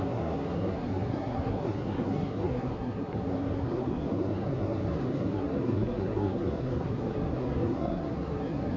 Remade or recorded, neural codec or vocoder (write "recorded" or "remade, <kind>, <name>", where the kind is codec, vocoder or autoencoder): remade, codec, SNAC